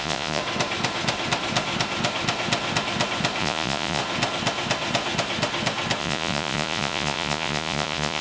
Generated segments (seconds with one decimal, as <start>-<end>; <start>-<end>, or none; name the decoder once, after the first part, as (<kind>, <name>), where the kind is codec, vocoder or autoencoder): 0.0-0.4 (vocoder, Vocos); 3.4-4.0; 6.0-8.2